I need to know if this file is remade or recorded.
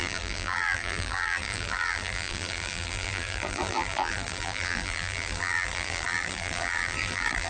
remade